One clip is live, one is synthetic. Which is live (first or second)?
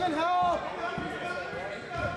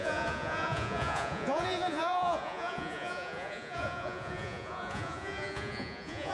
first